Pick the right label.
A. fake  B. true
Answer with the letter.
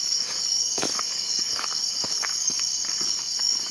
A